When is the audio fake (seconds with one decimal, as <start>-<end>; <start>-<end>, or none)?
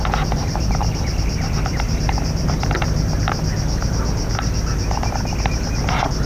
0.4-3.1